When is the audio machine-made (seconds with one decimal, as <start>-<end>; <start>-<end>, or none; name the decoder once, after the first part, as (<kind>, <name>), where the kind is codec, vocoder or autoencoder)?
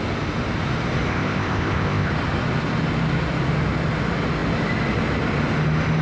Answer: 1.1-2.1 (codec, ZipCodec)